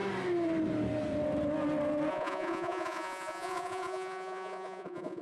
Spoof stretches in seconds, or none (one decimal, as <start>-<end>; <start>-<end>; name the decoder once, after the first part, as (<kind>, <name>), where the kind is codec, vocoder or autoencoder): 2.1-5.2 (vocoder, Vocos)